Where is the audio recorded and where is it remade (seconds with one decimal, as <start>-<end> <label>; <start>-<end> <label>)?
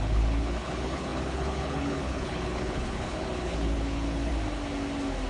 0.0-4.3 remade; 4.3-5.3 recorded